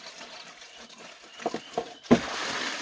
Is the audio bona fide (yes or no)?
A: yes